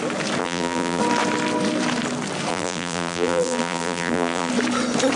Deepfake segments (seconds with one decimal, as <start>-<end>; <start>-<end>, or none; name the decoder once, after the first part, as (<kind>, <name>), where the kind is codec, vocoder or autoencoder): 0.4-1.0 (vocoder, BigVGAN v2); 2.5-4.5